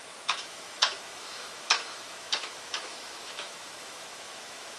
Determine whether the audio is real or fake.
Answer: fake